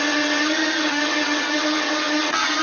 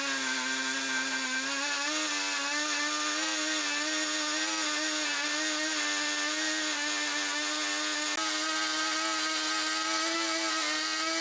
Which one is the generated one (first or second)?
first